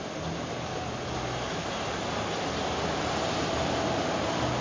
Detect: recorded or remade recorded